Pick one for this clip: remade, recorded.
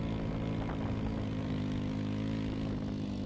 recorded